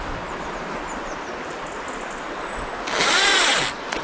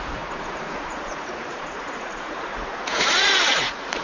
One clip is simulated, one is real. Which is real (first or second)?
first